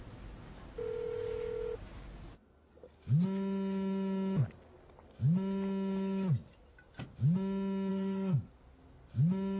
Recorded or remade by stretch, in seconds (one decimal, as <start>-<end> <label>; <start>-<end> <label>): 0.0-7.9 recorded; 7.9-8.5 remade; 8.5-9.6 recorded